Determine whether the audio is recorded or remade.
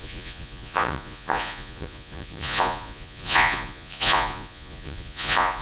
remade